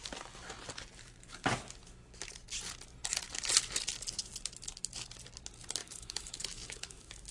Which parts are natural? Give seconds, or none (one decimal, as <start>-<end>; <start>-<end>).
0.0-5.8